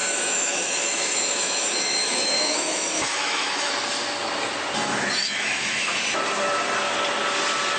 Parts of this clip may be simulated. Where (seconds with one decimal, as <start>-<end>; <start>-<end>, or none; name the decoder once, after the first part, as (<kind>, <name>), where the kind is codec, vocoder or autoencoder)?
0.0-3.7 (autoencoder, DAC-VAE); 5.2-5.9

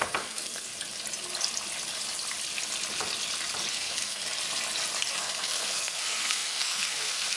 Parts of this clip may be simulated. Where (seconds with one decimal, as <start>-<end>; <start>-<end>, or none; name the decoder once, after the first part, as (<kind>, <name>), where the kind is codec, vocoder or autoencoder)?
0.0-0.7 (codec, SNAC); 3.7-4.2; 5.1-7.4

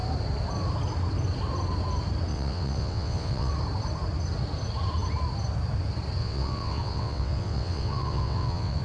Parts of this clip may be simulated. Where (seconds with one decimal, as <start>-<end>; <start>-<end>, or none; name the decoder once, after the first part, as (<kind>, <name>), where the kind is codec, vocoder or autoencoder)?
2.3-3.5 (vocoder, WaveNeXt); 6.2-8.8

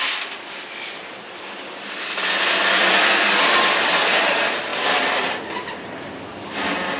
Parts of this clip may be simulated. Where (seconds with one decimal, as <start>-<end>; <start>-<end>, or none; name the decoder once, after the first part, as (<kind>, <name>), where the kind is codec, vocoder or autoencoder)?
none

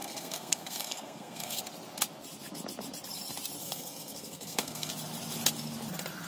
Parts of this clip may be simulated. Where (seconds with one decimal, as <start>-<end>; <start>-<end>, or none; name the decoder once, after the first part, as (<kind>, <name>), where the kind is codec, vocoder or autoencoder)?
0.0-1.6 (codec, SNAC); 3.6-4.9